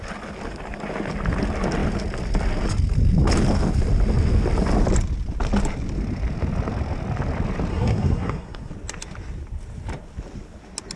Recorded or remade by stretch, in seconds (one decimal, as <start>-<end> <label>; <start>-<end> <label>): 0.0-7.7 recorded; 7.7-8.7 remade; 8.7-11.0 recorded

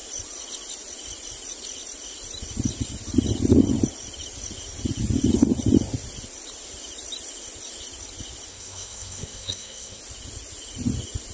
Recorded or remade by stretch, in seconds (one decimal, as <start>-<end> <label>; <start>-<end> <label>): 0.0-8.5 recorded; 8.5-10.0 remade; 10.0-11.3 recorded

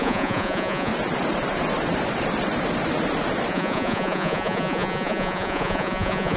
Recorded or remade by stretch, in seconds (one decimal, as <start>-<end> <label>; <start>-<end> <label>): 0.0-0.9 remade; 0.9-3.5 recorded; 3.5-6.4 remade

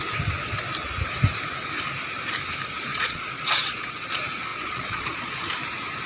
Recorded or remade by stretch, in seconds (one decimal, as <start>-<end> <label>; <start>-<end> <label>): 0.0-2.9 recorded; 2.9-3.9 remade; 3.9-4.5 recorded; 4.5-5.4 remade; 5.4-6.1 recorded

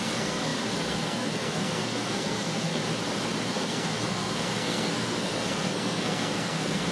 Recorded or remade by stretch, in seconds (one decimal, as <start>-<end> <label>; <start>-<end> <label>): 0.0-2.8 remade; 2.8-3.5 recorded; 3.5-6.9 remade

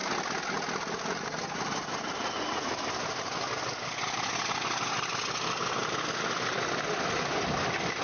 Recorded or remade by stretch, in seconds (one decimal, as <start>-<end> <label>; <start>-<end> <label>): 0.0-8.0 recorded